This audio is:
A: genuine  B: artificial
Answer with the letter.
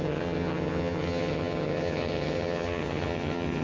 B